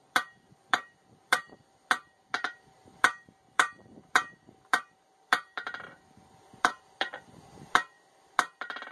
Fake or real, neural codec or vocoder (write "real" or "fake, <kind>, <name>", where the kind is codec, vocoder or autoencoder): fake, vocoder, BigVGAN v2